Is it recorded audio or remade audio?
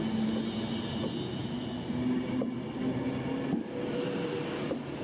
recorded